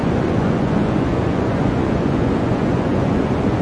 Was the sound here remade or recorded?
remade